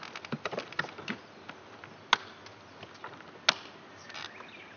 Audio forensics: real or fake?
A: real